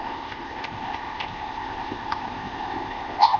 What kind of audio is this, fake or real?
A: fake